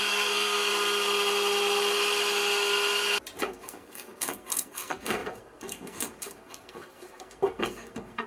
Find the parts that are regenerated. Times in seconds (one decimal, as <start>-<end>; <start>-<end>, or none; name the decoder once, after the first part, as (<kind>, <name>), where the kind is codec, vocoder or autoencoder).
0.0-0.7 (codec, SNAC); 3.4-8.3